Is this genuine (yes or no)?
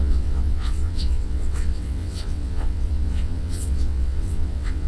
no